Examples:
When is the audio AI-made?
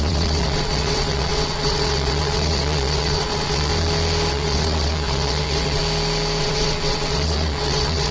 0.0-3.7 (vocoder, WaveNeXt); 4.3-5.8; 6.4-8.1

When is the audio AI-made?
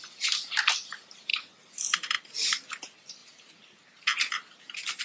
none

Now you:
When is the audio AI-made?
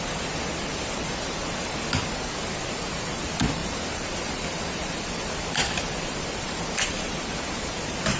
none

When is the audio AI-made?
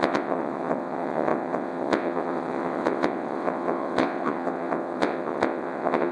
0.0-6.1 (vocoder, WaveNeXt)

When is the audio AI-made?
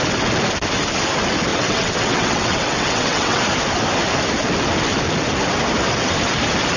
1.5-3.4 (vocoder, WaveNeXt)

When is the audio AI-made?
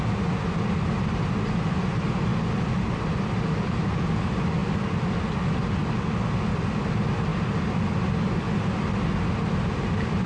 none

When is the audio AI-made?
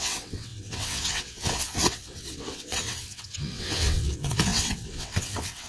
0.0-5.7 (vocoder, WaveNeXt)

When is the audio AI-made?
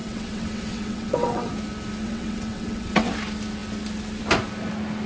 0.0-1.5 (vocoder, WaveNeXt); 2.0-3.1